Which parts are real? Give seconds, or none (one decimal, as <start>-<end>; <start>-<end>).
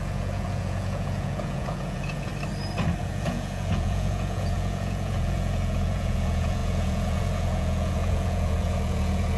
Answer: 2.3-3.0